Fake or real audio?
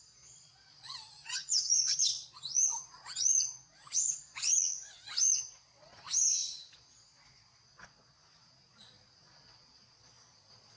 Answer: fake